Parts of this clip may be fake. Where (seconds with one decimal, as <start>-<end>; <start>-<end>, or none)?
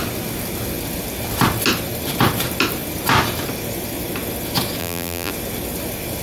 4.8-5.3